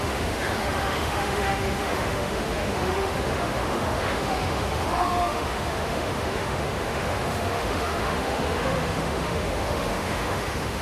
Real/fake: fake